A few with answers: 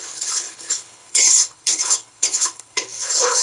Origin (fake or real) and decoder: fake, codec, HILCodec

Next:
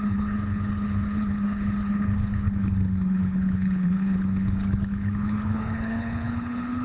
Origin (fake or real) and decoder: fake, codec, HILCodec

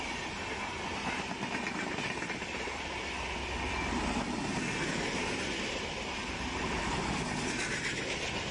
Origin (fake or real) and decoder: real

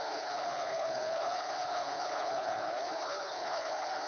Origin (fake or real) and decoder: fake, codec, HILCodec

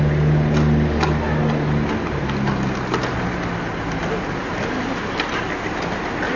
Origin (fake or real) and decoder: real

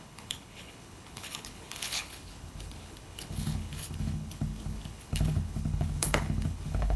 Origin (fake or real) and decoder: fake, codec, HILCodec